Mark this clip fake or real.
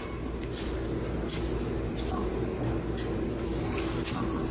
real